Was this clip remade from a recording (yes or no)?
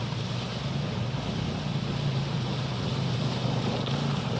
no